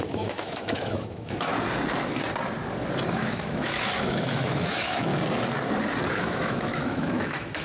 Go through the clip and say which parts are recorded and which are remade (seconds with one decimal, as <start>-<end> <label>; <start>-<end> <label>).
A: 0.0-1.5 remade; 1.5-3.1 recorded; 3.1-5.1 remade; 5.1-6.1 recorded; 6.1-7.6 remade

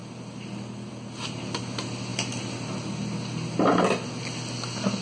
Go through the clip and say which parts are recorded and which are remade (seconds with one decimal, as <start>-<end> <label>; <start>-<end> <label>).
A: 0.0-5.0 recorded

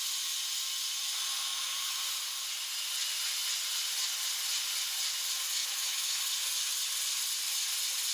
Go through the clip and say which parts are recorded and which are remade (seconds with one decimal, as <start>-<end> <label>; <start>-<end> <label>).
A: 0.0-1.5 recorded; 1.5-2.0 remade; 2.0-5.6 recorded; 5.6-6.2 remade; 6.2-8.1 recorded